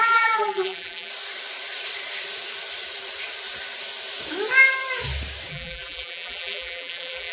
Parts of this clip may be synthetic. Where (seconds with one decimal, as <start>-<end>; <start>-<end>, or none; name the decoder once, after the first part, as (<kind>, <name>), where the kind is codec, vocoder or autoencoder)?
0.0-1.1 (vocoder, BigVGAN v2); 5.5-7.3